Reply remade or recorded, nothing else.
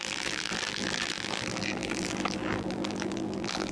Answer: remade